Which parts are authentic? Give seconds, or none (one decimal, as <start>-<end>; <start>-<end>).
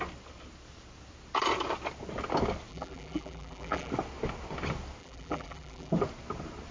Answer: 0.0-2.7; 3.9-5.0; 5.9-6.7